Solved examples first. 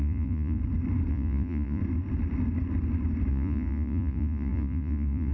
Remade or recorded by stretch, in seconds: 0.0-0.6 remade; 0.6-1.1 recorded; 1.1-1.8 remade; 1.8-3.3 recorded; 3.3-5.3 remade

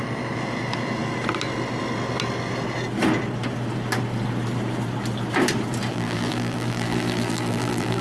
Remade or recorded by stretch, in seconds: 0.0-5.9 recorded; 5.9-8.0 remade

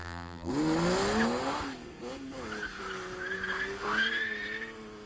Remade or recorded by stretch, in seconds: 0.0-0.5 remade; 0.5-5.1 recorded

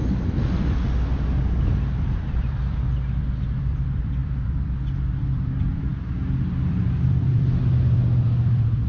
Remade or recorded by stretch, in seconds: 0.0-1.6 recorded; 1.6-5.9 remade; 5.9-6.5 recorded; 6.5-8.9 remade

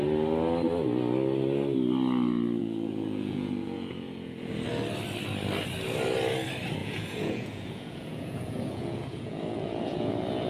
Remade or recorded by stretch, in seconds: 0.0-2.6 recorded; 2.6-4.5 remade; 4.5-6.8 recorded; 6.8-10.5 remade

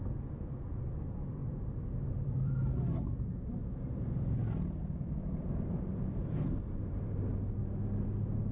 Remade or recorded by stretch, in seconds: 0.0-1.4 remade; 1.4-2.1 recorded; 2.1-3.6 remade; 3.6-4.8 recorded; 4.8-7.3 remade; 7.3-8.5 recorded

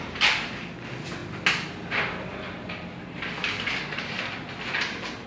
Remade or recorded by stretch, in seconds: 0.0-5.3 recorded